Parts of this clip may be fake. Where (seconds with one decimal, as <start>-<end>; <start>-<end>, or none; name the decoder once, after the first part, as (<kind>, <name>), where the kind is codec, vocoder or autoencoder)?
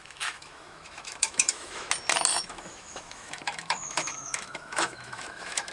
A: 0.0-1.9 (autoencoder, DAC-VAE); 2.3-5.7